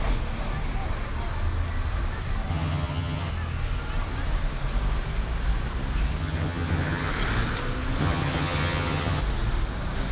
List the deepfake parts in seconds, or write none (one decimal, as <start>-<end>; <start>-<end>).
2.5-3.3; 6.2-7.1; 8.0-9.2